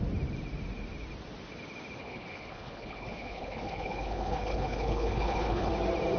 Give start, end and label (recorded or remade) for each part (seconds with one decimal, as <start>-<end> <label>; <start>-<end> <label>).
0.0-2.0 recorded; 2.0-5.7 remade; 5.7-6.2 recorded